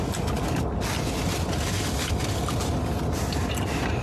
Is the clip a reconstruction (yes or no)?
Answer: no